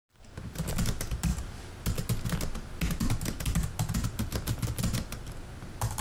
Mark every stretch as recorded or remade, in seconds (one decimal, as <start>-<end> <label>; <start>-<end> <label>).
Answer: 0.0-6.0 recorded